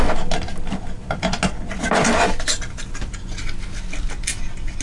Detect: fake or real real